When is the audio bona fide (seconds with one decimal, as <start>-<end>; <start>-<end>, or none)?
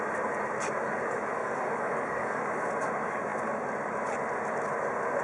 0.0-1.4; 2.5-5.2